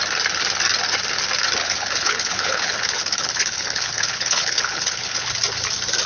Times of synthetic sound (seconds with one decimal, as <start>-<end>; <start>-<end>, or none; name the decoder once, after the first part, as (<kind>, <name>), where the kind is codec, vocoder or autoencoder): 1.6-5.3 (codec, HILCodec)